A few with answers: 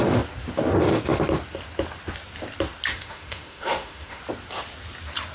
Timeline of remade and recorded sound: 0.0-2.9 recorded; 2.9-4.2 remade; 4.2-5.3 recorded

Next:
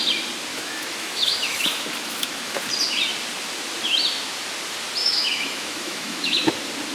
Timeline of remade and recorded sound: 0.0-0.5 recorded; 0.5-2.6 remade; 2.6-5.0 recorded; 5.0-6.5 remade; 6.5-6.9 recorded